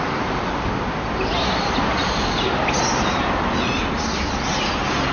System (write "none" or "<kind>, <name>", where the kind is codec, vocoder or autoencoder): none